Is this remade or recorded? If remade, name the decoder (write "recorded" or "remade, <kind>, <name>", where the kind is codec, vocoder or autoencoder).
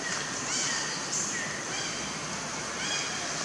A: recorded